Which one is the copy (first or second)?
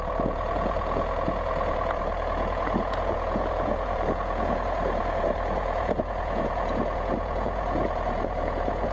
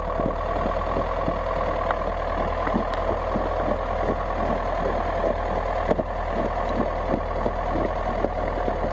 first